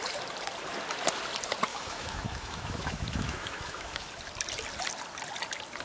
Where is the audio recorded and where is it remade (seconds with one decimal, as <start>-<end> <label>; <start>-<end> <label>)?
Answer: 0.0-1.7 recorded; 1.7-4.1 remade; 4.1-5.8 recorded